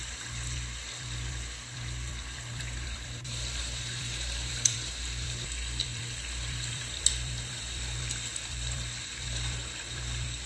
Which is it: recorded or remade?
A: remade